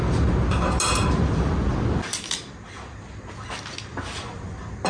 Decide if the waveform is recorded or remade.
recorded